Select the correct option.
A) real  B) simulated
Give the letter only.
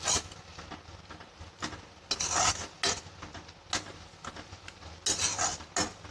A